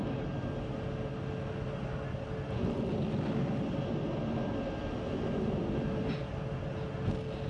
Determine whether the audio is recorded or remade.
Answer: recorded